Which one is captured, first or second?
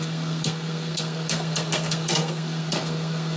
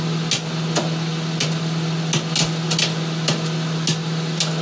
second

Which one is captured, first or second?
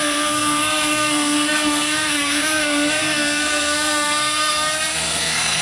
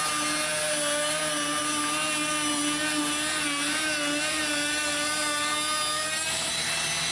second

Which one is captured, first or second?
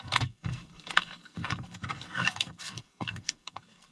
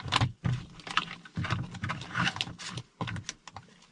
second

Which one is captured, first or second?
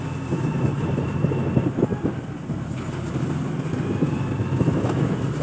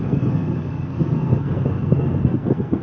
first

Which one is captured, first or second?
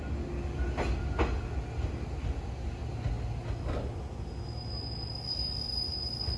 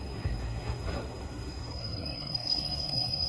first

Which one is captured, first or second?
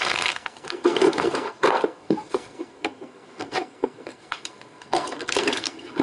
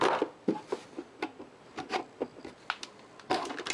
second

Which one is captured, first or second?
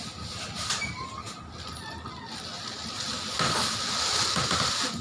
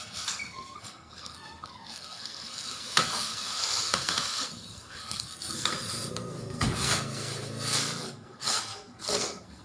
first